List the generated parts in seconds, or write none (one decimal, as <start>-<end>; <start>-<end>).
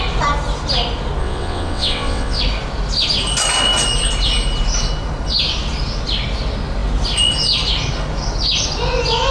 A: 1.2-2.4